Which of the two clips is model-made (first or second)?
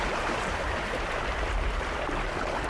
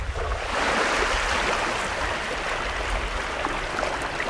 first